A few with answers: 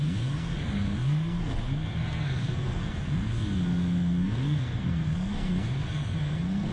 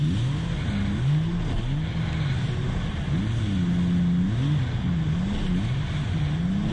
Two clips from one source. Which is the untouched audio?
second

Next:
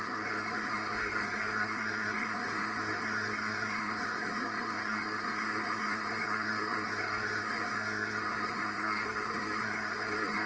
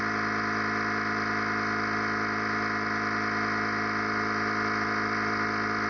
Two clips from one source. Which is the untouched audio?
second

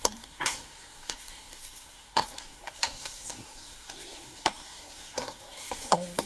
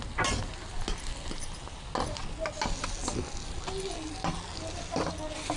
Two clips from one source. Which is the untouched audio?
second